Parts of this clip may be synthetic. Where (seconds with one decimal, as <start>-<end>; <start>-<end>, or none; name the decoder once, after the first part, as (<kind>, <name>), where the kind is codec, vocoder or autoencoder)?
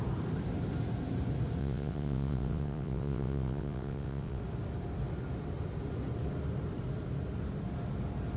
1.6-4.4 (vocoder, WaveNeXt)